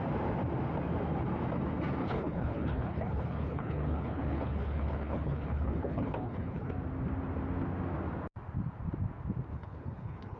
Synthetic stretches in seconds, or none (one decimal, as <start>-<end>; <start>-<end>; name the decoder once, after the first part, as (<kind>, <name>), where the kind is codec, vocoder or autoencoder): 2.0-6.7 (codec, HILCodec); 9.5-10.4